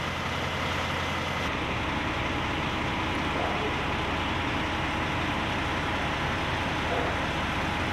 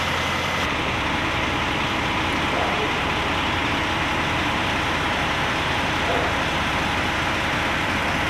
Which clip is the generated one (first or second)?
second